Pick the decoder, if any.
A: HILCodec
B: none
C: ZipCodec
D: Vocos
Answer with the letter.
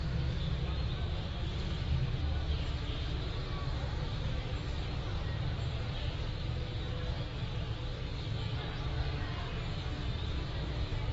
B